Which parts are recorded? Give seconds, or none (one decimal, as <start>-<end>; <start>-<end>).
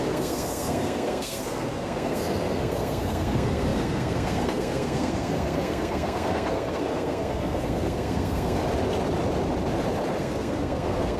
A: 8.6-10.2